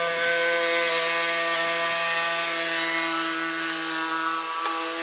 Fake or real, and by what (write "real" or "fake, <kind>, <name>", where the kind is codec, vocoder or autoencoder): real